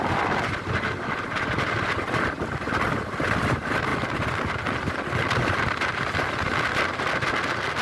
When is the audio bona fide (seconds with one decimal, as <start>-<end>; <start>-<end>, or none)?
0.0-7.8

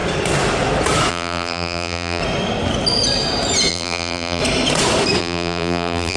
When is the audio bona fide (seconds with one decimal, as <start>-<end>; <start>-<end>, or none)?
0.0-1.1; 2.2-3.7; 4.4-5.2

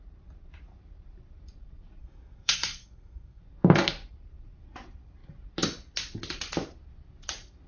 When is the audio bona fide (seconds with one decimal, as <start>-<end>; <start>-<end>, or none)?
0.0-2.0; 3.4-7.7

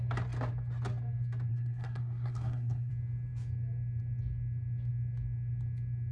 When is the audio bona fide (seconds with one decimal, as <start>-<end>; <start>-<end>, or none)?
0.0-1.5; 2.9-6.1

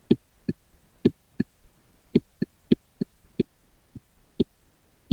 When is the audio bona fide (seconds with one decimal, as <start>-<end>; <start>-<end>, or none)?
0.0-1.0; 3.4-5.1

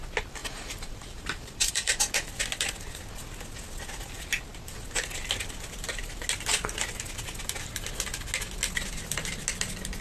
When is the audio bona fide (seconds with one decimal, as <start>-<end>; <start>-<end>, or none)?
0.0-0.4; 2.1-10.0